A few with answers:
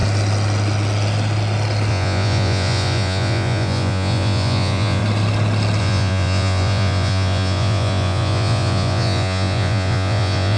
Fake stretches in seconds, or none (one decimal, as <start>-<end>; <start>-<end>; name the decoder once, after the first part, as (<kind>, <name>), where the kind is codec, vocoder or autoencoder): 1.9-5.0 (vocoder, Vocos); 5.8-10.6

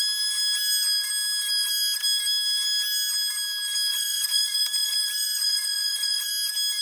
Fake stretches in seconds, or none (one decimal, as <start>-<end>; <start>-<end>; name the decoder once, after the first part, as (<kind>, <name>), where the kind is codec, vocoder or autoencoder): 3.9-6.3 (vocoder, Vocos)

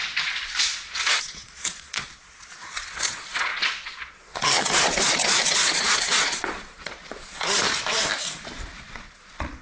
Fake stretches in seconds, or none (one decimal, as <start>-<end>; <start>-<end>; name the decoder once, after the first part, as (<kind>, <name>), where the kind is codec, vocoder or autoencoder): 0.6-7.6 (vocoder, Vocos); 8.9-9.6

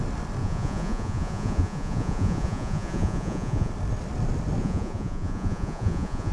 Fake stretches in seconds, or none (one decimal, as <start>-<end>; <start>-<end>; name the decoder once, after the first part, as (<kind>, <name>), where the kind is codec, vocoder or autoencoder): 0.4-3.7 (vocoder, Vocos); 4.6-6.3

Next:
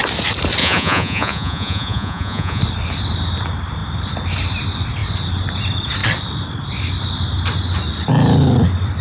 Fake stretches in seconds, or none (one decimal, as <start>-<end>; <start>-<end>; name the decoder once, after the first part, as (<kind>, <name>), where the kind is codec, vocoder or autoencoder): 0.6-2.6 (vocoder, Vocos)

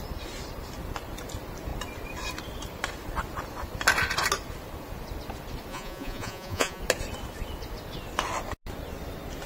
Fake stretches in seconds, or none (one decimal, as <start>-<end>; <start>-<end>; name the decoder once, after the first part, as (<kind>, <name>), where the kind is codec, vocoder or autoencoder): 5.7-6.8 (vocoder, Vocos)

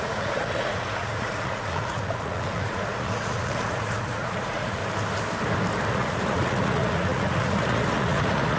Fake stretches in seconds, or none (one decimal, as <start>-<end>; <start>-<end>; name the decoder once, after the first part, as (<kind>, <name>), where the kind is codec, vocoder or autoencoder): 0.0-4.8 (vocoder, Vocos); 5.9-8.6

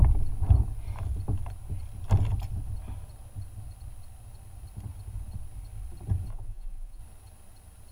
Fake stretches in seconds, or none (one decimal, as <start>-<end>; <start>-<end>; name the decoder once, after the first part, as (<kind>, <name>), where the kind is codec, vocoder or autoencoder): 6.3-7.0 (vocoder, Vocos)